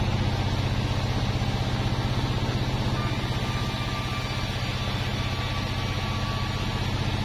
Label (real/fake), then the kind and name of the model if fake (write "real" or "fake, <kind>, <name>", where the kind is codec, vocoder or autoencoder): real